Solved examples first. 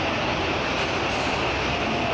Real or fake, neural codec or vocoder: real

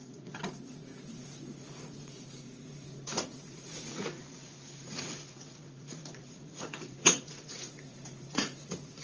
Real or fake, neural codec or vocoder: fake, vocoder, Vocos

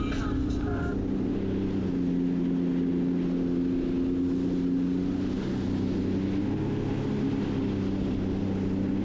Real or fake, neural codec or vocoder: real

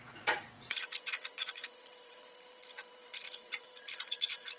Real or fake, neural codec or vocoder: fake, vocoder, Vocos